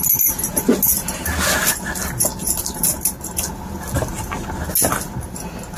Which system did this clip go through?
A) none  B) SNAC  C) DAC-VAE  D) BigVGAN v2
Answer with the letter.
A